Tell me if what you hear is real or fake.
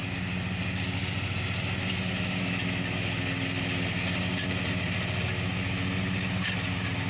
real